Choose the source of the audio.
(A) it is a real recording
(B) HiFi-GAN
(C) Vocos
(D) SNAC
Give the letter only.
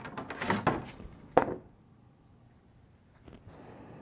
A